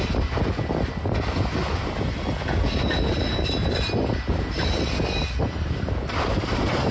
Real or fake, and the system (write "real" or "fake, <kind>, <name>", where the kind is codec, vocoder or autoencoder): real